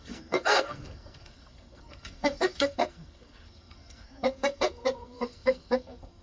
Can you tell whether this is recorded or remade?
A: remade